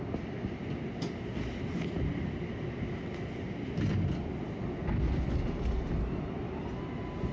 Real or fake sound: real